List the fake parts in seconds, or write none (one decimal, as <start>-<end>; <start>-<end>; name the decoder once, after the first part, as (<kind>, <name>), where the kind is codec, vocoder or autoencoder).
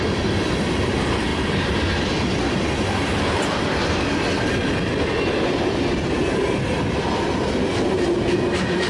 none